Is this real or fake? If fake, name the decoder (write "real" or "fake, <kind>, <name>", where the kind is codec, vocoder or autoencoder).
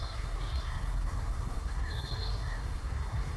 fake, codec, SNAC